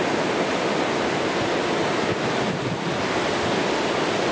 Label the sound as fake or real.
real